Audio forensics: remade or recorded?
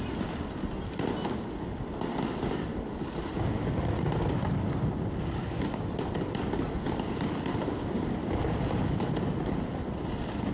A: recorded